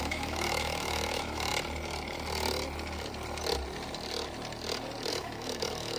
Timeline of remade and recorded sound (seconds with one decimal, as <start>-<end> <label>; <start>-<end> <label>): 0.0-1.5 remade; 1.5-5.1 recorded; 5.1-6.0 remade